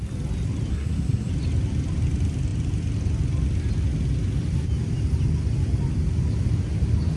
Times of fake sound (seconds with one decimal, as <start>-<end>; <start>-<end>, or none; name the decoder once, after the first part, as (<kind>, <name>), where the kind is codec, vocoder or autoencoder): 0.7-1.3 (codec, SNAC)

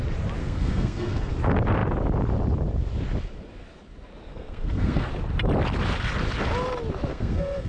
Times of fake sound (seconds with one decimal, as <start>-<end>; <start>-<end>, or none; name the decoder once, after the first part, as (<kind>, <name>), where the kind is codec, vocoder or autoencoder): 0.4-1.3 (codec, SNAC); 4.3-5.1; 7.1-7.7

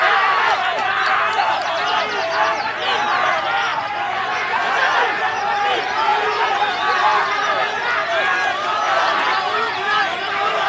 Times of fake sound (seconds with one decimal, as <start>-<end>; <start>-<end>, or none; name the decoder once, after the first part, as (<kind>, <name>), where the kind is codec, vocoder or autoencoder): 3.7-5.2 (vocoder, Vocos)

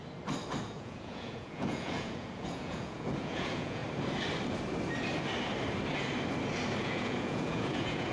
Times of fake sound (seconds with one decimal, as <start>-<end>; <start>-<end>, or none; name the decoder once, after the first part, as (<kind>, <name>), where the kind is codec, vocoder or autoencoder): 0.6-3.8 (vocoder, Vocos); 6.8-8.1